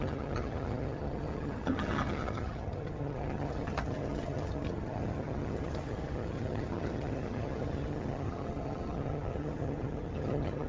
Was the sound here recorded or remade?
remade